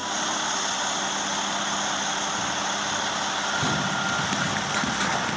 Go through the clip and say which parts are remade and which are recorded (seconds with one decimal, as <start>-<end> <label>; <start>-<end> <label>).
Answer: 0.0-5.4 recorded

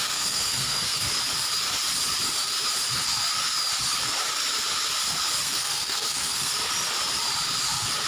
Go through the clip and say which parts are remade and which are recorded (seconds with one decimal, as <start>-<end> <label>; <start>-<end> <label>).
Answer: 0.0-1.0 remade; 1.0-5.4 recorded; 5.4-6.5 remade; 6.5-8.1 recorded